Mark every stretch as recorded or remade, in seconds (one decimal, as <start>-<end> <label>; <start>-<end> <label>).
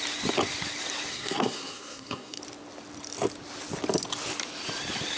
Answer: 0.0-1.1 recorded; 1.1-2.4 remade; 2.4-5.2 recorded